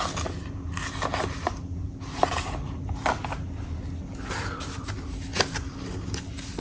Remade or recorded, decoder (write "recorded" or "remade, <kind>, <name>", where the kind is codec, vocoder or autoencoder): recorded